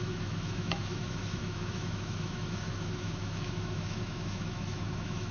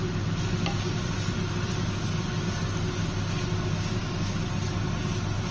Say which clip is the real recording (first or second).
second